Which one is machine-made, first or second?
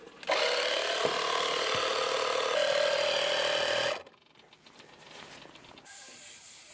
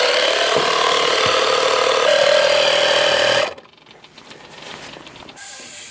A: second